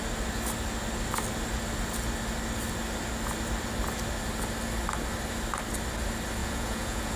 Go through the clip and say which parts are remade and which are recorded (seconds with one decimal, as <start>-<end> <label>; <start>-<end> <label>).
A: 0.0-6.4 recorded; 6.4-7.2 remade